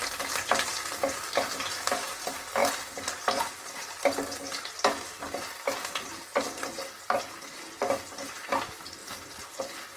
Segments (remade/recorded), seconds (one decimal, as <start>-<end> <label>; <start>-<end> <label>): 0.0-10.0 recorded